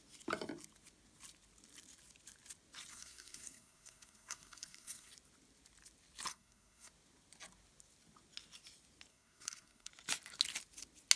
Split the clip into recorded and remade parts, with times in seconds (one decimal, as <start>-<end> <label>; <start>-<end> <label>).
0.0-2.9 recorded; 2.9-5.1 remade; 5.1-6.3 recorded; 6.3-6.9 remade; 6.9-9.1 recorded; 9.1-9.9 remade; 9.9-11.2 recorded